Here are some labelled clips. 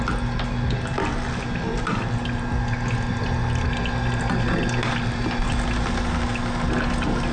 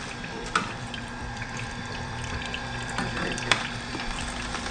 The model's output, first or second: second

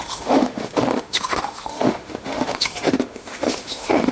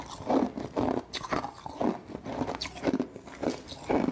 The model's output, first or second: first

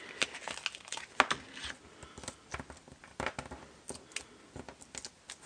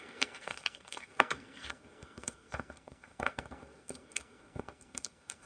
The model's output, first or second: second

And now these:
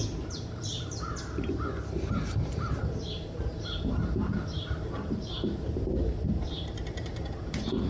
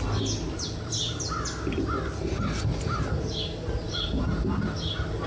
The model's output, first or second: first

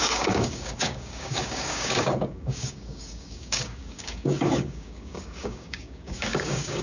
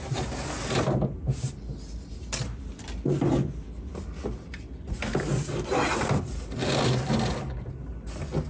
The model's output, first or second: first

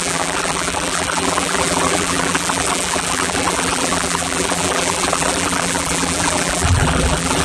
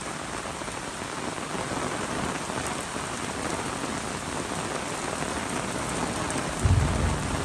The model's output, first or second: first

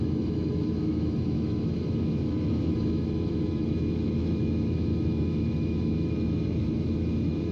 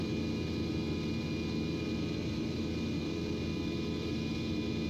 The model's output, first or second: first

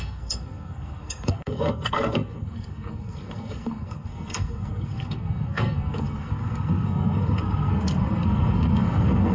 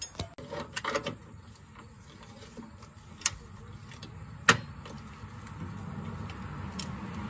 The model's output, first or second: first